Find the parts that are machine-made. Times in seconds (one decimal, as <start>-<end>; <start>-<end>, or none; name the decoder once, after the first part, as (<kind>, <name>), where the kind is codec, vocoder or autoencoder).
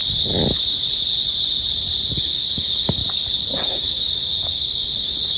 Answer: 2.2-3.0 (codec, DAC); 3.6-5.4